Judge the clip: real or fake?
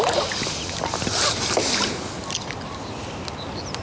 real